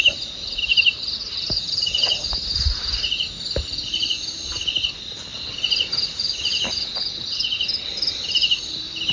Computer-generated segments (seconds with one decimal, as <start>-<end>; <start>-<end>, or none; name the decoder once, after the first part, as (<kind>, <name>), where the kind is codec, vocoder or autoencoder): none